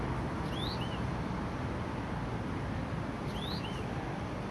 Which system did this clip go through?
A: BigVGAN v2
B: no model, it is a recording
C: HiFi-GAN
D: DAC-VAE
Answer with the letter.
A